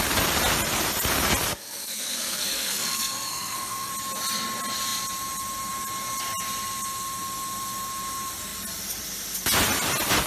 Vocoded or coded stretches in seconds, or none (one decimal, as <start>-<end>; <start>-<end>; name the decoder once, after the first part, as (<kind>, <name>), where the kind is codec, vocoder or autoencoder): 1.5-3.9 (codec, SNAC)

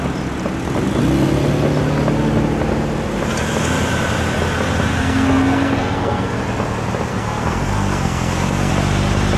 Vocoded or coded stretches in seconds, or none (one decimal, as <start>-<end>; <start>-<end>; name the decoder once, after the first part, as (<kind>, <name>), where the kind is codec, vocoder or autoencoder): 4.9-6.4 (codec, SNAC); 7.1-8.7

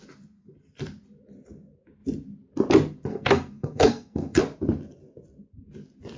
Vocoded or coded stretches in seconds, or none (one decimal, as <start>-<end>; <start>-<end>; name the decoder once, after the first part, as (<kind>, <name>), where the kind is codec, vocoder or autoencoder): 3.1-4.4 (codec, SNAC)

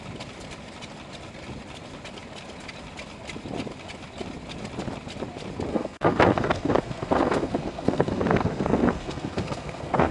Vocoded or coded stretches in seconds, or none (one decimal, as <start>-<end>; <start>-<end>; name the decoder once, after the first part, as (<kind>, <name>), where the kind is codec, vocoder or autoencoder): 5.7-10.1 (codec, SNAC)

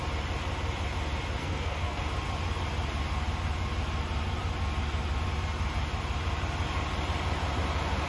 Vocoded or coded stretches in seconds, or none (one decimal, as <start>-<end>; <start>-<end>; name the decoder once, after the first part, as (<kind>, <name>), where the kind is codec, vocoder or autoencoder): 1.4-2.0 (codec, SNAC)